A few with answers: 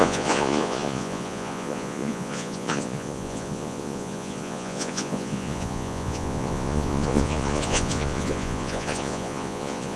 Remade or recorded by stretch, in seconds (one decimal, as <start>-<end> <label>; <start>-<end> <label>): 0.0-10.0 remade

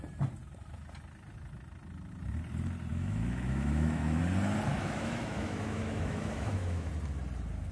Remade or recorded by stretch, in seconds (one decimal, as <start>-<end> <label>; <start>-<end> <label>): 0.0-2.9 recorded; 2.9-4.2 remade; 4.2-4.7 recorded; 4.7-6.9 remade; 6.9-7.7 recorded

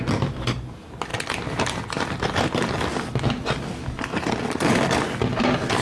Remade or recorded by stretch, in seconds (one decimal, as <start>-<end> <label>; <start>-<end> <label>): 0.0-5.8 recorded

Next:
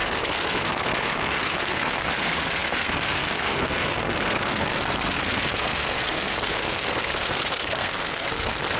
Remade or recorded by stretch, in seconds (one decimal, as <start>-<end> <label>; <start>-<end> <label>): 0.0-8.8 remade

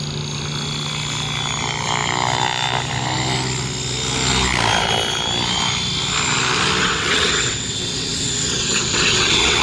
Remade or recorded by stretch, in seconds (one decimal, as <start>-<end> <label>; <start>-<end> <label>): 0.0-6.8 recorded; 6.8-9.6 remade

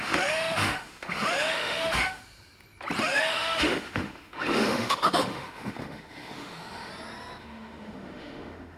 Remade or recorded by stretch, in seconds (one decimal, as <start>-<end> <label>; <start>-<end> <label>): 0.0-2.2 remade; 2.2-3.0 recorded; 3.0-6.9 remade; 6.9-7.4 recorded; 7.4-8.8 remade

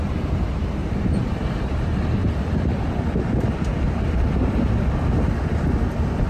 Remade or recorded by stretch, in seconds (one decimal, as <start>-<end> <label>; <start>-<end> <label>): 0.0-0.8 recorded; 0.8-1.5 remade; 1.5-2.2 recorded; 2.2-3.5 remade; 3.5-6.3 recorded